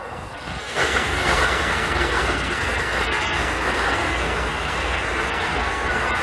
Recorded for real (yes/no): no